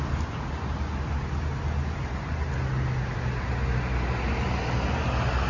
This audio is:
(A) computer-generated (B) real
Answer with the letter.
B